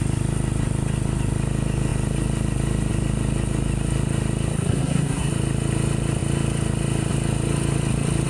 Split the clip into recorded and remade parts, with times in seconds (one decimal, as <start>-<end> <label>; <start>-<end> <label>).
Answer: 0.0-4.5 recorded; 4.5-5.3 remade; 5.3-8.3 recorded